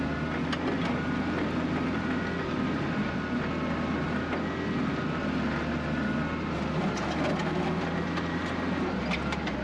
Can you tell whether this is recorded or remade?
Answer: recorded